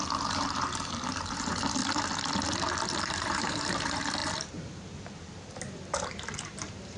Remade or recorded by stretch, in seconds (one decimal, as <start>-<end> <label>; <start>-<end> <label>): 0.0-1.8 remade; 1.8-3.0 recorded; 3.0-7.0 remade